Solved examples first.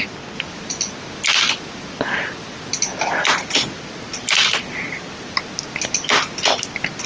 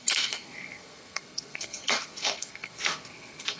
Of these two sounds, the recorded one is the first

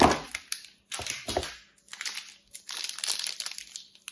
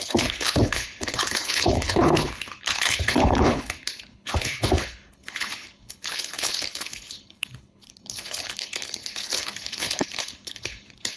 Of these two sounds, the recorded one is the first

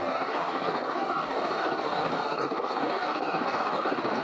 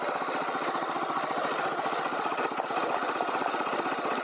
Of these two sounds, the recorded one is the second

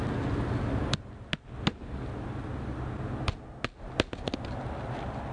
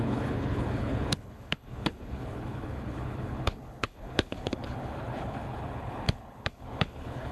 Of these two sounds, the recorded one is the first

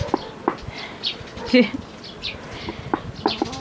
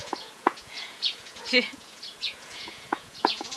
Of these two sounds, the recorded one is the first